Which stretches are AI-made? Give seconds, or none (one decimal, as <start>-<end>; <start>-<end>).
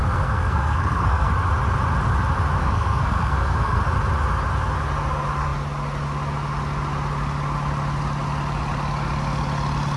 0.0-1.3; 2.6-3.8